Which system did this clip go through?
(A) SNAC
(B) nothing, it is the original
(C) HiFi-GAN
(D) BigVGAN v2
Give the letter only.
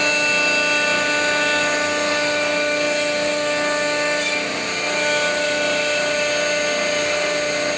B